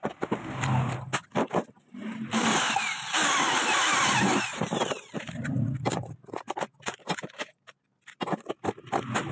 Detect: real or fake real